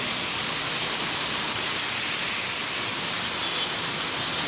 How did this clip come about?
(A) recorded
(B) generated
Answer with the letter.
A